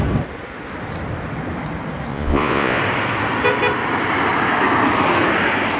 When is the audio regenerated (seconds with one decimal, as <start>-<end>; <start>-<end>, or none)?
2.1-2.8